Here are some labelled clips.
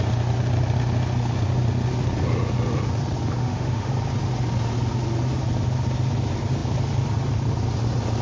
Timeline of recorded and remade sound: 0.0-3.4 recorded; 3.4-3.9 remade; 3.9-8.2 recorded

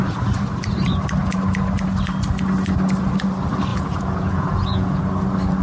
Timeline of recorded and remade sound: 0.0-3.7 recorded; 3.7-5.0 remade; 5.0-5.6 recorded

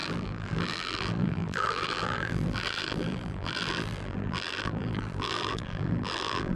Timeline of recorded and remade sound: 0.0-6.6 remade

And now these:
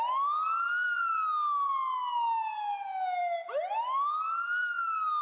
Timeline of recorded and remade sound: 0.0-5.2 recorded

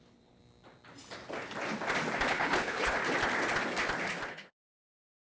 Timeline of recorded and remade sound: 0.0-0.4 remade; 0.4-2.3 recorded; 2.3-3.0 remade; 3.0-4.3 recorded; 4.3-5.3 remade

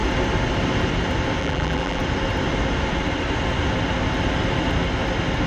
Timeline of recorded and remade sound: 0.0-1.4 recorded; 1.4-2.0 remade; 2.0-5.5 recorded

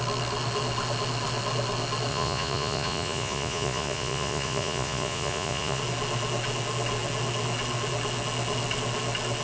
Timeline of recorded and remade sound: 0.0-2.1 recorded; 2.1-5.8 remade; 5.8-9.4 recorded